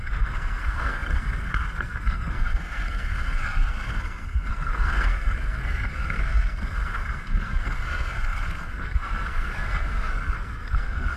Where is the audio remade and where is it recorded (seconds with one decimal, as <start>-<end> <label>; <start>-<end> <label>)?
0.0-11.2 remade